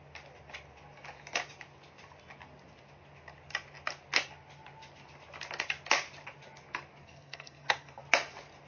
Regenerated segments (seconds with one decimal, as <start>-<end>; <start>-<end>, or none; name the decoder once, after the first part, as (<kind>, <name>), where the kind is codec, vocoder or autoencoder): 7.0-8.0 (codec, SNAC)